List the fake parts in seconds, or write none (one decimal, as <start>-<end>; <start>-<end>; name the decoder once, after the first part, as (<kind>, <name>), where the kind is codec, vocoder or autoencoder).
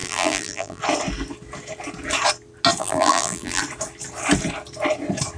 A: 0.0-0.8 (vocoder, BigVGAN v2); 2.8-3.6